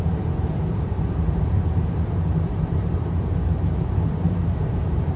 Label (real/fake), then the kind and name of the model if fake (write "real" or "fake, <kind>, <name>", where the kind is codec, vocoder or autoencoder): fake, vocoder, BigVGAN v2